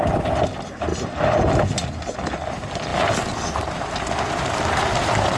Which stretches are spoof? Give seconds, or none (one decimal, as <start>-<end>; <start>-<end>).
none